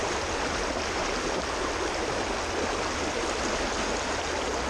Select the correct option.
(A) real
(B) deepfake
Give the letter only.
A